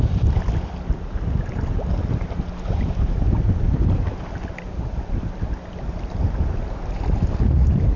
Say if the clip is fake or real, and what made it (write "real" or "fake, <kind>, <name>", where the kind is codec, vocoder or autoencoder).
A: real